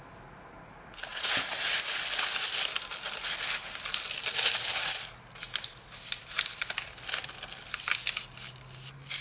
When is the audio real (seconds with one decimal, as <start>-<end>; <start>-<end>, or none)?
0.0-1.1; 2.0-9.2